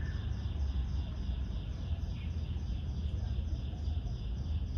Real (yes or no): yes